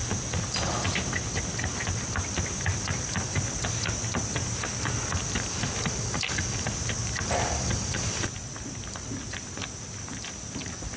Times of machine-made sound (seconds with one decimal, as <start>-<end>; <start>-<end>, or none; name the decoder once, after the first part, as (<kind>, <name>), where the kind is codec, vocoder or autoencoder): none